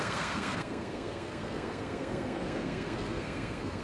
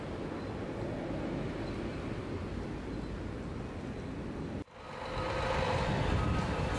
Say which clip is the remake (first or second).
first